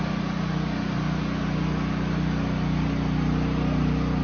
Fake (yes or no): no